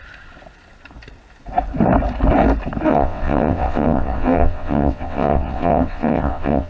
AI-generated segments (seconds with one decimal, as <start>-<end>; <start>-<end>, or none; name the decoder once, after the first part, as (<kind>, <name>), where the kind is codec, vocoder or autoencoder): 2.9-6.7 (vocoder, WaveNeXt)